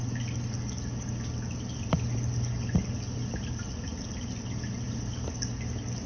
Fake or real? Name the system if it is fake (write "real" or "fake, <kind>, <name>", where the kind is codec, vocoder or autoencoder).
real